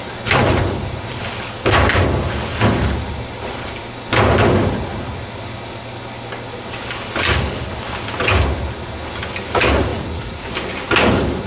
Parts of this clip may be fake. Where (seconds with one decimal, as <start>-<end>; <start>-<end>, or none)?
9.9-10.5